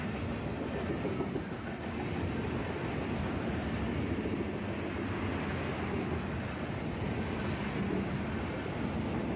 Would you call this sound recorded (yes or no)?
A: yes